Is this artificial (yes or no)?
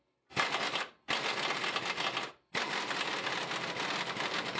no